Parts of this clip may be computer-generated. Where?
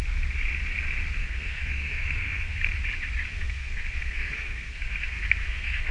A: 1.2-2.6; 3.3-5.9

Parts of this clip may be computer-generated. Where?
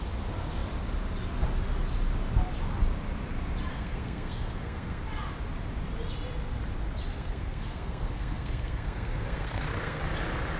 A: 3.7-5.0; 7.1-10.0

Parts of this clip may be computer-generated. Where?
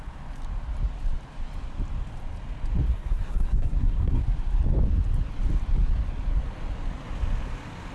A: 2.9-4.2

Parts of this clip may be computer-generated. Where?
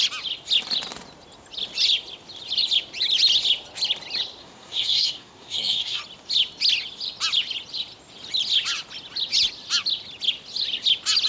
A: 4.4-6.0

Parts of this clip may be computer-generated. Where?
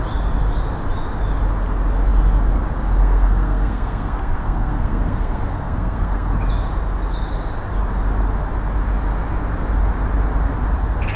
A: 3.0-6.3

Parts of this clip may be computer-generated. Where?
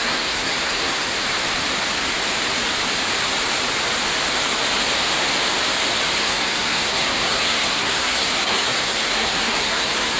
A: 0.0-1.2; 6.2-10.2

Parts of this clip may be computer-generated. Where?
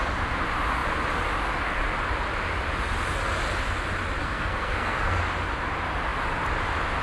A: 4.2-5.2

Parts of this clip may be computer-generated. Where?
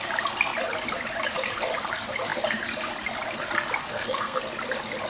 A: 3.8-4.4